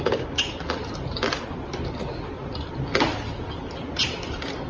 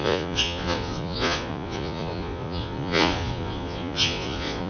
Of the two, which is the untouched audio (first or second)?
first